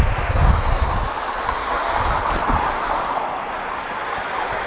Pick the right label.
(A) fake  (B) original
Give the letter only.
B